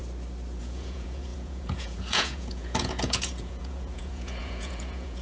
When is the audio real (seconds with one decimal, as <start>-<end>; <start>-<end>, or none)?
0.0-0.6